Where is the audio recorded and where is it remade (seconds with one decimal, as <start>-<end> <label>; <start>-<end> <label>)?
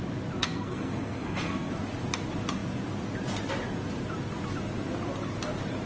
0.0-0.4 recorded; 0.4-1.7 remade; 1.7-5.9 recorded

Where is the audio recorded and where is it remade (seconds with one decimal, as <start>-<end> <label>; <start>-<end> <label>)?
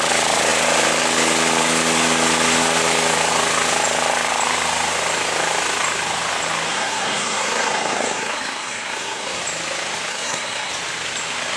0.0-6.7 recorded; 6.7-9.4 remade; 9.4-10.1 recorded; 10.1-10.7 remade; 10.7-11.6 recorded